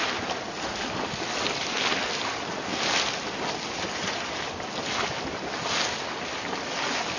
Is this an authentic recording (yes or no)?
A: yes